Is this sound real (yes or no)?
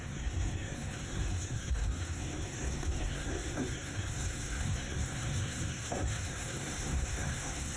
no